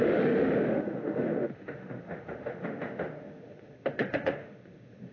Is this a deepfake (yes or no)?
yes